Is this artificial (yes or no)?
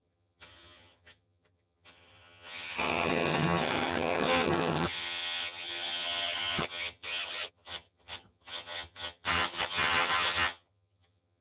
yes